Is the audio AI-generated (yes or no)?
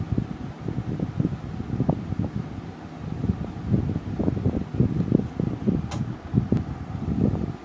no